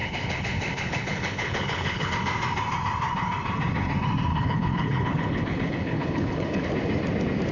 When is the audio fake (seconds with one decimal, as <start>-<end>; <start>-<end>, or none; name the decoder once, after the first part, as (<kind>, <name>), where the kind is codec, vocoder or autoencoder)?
0.0-2.1 (codec, HILCodec); 4.3-6.6